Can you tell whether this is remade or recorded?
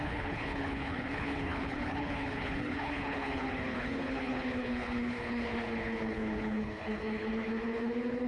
remade